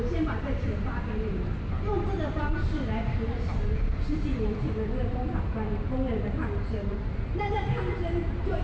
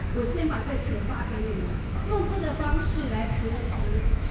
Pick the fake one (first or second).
second